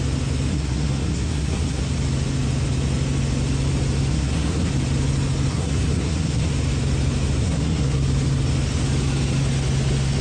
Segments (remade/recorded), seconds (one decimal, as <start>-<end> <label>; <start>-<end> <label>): 0.0-0.5 recorded; 0.5-1.8 remade; 1.8-4.1 recorded; 4.1-4.7 remade; 4.7-5.5 recorded; 5.5-6.5 remade; 6.5-7.4 recorded; 7.4-8.0 remade; 8.0-10.2 recorded

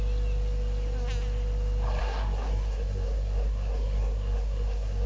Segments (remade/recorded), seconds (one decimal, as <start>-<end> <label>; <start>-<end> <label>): 0.0-2.0 recorded; 2.0-5.1 remade

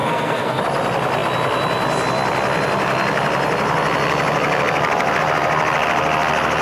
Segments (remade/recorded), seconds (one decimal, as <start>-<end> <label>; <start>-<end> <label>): 0.0-0.6 remade; 0.6-6.6 recorded

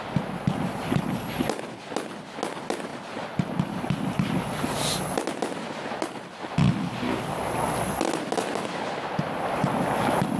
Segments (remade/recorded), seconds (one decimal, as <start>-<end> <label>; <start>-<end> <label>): 0.0-10.4 recorded

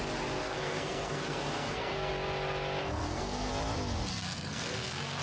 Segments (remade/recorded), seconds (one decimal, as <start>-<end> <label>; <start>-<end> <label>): 0.0-0.4 recorded; 0.4-2.1 remade; 2.1-2.8 recorded; 2.8-3.5 remade; 3.5-4.1 recorded; 4.1-5.2 remade

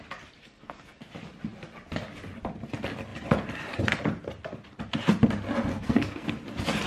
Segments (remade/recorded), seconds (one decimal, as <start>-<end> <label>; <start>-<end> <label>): 0.0-0.4 recorded; 0.4-1.1 remade; 1.1-5.7 recorded; 5.7-6.3 remade; 6.3-6.9 recorded

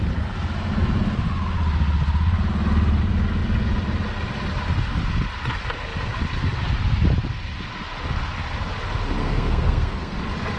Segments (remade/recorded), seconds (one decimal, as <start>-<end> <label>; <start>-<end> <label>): 0.0-9.2 recorded; 9.2-10.2 remade; 10.2-10.6 recorded

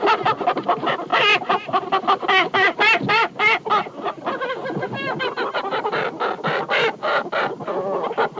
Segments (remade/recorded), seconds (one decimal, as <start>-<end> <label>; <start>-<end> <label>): 0.0-8.4 recorded